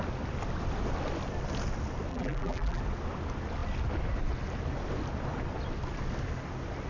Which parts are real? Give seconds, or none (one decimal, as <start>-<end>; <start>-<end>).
0.0-2.1; 2.8-6.9

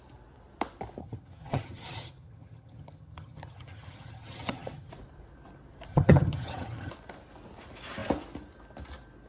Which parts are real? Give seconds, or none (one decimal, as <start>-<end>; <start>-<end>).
0.0-1.0; 4.9-5.9; 6.9-9.3

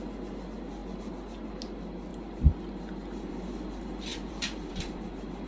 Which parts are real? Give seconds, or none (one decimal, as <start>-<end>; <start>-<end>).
0.0-4.1; 4.7-5.5

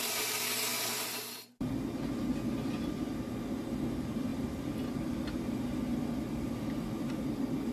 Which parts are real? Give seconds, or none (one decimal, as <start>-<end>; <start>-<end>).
0.0-0.7; 1.7-7.7